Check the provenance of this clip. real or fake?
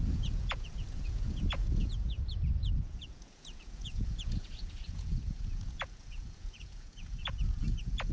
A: fake